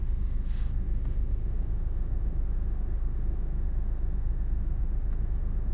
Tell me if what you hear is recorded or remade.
remade